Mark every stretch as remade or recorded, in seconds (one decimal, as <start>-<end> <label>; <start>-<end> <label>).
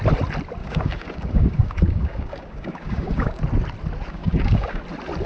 0.0-0.6 recorded; 0.6-3.4 remade; 3.4-4.1 recorded; 4.1-4.8 remade; 4.8-5.3 recorded